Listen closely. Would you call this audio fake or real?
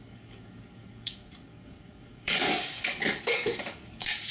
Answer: fake